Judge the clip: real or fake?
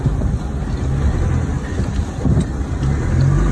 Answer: real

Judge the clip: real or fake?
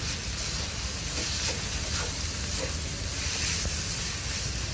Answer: real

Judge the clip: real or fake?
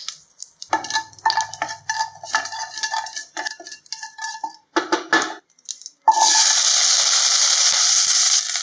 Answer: real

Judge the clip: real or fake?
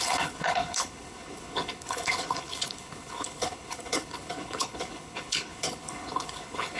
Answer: fake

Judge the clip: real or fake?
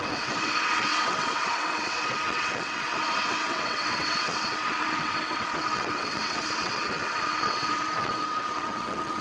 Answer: fake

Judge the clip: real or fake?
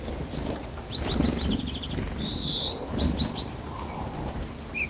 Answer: real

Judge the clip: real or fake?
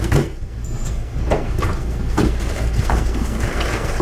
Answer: fake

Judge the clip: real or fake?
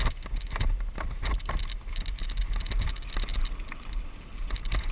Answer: real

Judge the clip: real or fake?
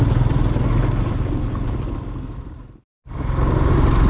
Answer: real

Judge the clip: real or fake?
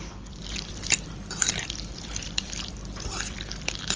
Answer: fake